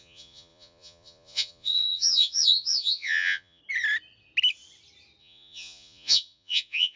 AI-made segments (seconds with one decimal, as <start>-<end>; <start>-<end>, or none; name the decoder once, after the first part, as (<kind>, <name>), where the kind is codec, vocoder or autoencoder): 0.0-3.6 (vocoder, Vocos); 5.2-7.0